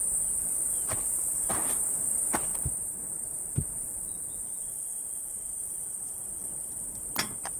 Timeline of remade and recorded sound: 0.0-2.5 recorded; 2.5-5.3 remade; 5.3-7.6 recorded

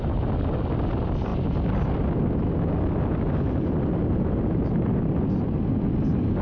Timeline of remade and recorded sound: 0.0-6.4 recorded

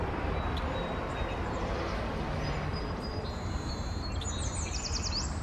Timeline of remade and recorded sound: 0.0-2.7 recorded; 2.7-3.7 remade; 3.7-5.4 recorded

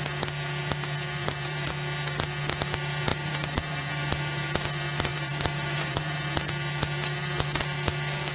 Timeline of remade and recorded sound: 0.0-1.2 recorded; 1.2-1.7 remade; 1.7-3.1 recorded; 3.1-3.9 remade; 3.9-5.1 recorded; 5.1-6.2 remade; 6.2-8.3 recorded

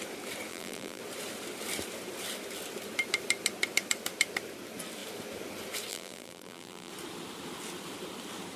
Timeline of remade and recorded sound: 0.0-0.5 recorded; 0.5-1.0 remade; 1.0-5.9 recorded; 5.9-6.9 remade; 6.9-8.6 recorded